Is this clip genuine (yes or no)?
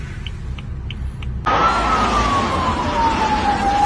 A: yes